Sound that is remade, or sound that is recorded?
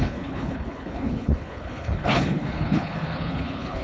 remade